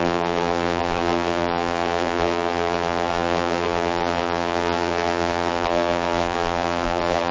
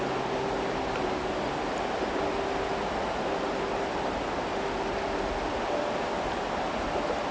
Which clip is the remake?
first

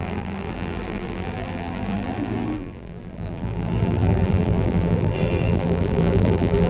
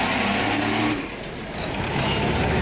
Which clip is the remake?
first